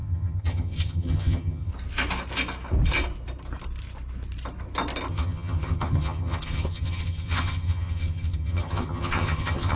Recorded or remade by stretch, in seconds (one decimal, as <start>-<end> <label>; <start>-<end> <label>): 0.0-1.7 remade; 1.7-5.1 recorded; 5.1-9.8 remade